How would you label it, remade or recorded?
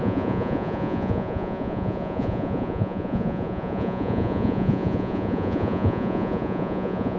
remade